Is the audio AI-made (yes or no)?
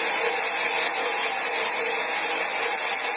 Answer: no